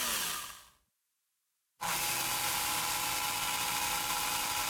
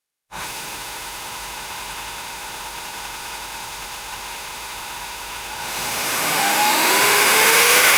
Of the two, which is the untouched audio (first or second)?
first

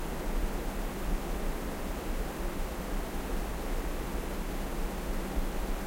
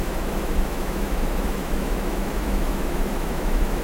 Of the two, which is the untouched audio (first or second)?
first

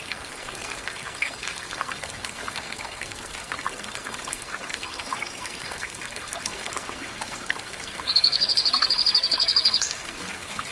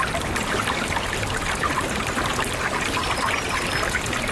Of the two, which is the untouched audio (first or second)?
second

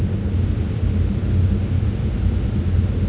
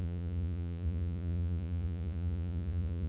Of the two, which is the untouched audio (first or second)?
first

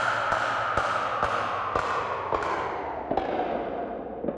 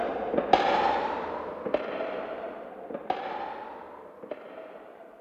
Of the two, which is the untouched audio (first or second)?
first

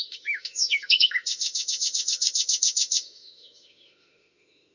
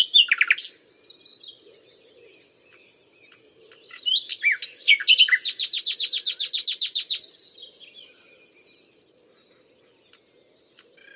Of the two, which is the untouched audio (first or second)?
second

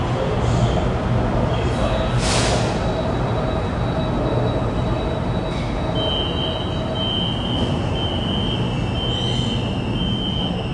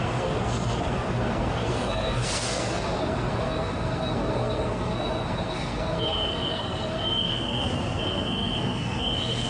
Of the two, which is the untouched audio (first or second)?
first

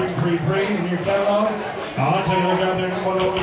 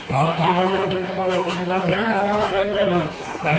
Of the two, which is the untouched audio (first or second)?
first